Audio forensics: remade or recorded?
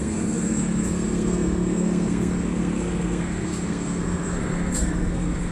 remade